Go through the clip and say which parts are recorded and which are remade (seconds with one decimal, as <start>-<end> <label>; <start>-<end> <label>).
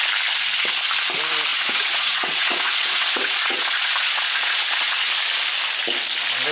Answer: 0.0-1.5 recorded; 1.5-5.1 remade; 5.1-6.5 recorded